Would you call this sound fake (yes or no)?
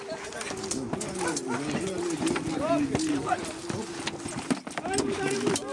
no